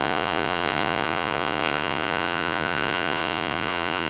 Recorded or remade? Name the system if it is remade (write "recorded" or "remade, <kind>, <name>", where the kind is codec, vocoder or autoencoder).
remade, vocoder, Vocos